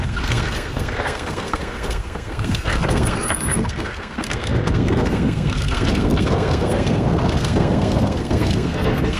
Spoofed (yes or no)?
yes